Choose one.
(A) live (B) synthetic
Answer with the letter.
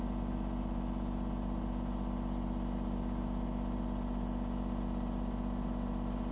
A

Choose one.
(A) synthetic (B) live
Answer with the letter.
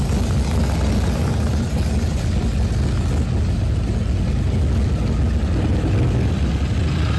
B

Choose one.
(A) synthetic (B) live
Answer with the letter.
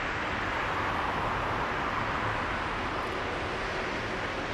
B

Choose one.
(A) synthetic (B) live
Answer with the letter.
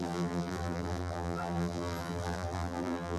A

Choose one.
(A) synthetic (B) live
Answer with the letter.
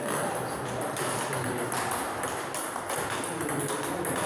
B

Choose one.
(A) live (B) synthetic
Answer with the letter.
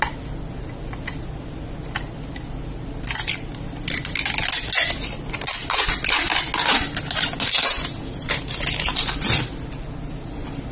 A